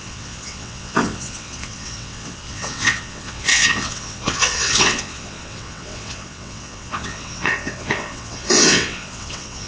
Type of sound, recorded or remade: remade